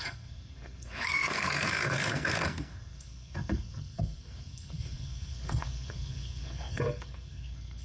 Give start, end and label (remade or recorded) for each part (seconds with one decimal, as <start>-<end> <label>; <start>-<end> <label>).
0.0-7.8 remade